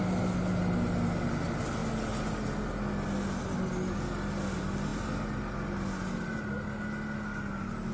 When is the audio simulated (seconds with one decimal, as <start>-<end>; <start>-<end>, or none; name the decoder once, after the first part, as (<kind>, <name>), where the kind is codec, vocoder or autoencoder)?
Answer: none